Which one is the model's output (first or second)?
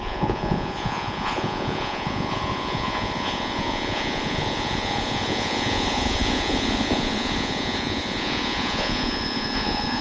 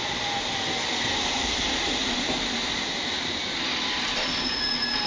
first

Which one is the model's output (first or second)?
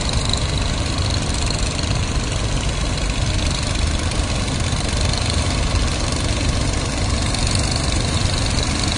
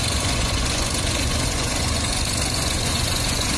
second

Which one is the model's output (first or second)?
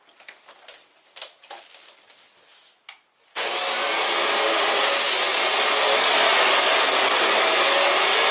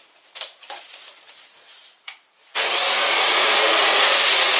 second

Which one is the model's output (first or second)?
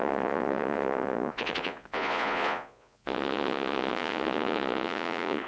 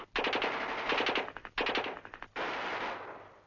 first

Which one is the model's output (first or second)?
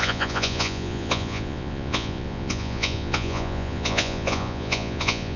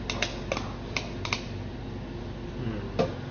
first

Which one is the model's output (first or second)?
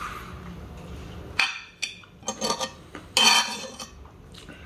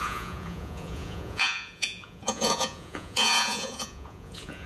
second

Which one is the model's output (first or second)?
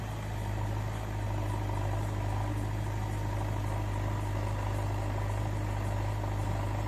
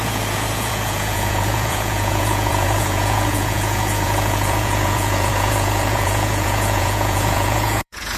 second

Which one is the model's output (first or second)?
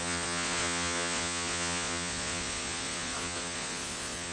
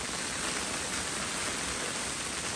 first